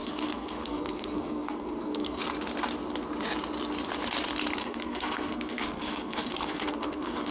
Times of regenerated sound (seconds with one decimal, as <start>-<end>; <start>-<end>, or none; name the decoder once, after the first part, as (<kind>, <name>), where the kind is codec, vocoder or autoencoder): 0.0-2.2 (codec, SNAC); 4.6-7.3